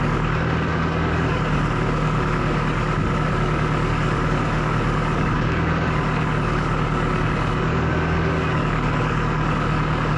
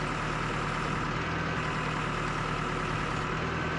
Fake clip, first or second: first